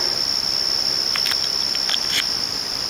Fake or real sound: fake